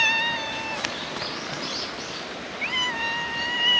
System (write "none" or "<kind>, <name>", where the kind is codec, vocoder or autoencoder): none